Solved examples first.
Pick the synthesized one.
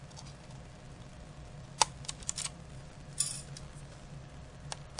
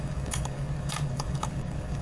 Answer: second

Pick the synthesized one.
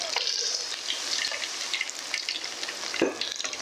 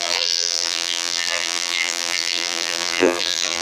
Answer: second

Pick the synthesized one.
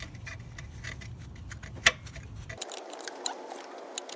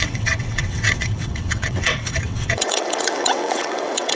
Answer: second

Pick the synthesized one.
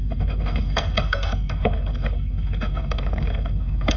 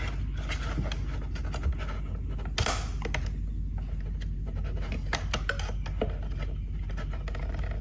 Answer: first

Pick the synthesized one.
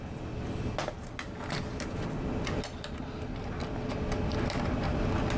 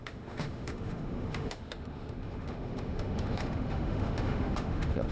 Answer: second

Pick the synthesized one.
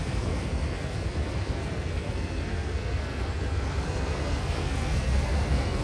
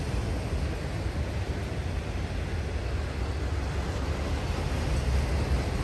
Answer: first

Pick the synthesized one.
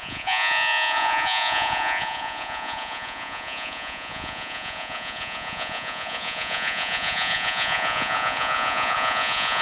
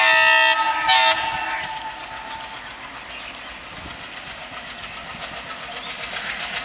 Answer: first